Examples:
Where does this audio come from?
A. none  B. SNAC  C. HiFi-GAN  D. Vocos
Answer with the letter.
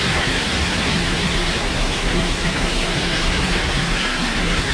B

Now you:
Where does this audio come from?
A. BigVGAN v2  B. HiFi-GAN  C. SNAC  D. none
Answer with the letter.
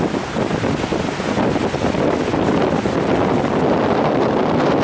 D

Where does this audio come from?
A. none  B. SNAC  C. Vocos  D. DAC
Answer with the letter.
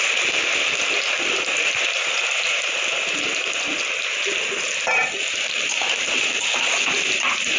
A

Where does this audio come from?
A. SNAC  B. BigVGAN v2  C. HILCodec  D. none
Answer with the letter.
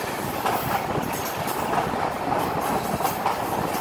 D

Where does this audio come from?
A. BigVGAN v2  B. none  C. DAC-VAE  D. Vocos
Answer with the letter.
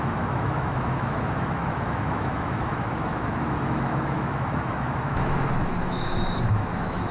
C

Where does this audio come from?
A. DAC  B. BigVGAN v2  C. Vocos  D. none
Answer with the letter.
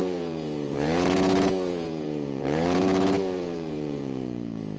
C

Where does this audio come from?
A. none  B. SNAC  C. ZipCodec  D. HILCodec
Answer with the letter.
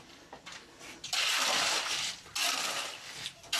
A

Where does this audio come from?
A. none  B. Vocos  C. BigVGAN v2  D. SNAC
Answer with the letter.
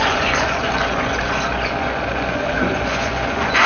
B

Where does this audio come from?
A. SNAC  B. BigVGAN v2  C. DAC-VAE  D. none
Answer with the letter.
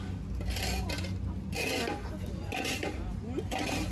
D